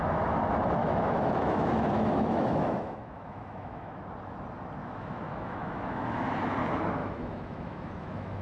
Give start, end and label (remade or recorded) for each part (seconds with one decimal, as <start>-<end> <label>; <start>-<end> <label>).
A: 0.0-0.8 recorded; 0.8-4.0 remade; 4.0-4.8 recorded; 4.8-6.3 remade; 6.3-7.0 recorded; 7.0-8.4 remade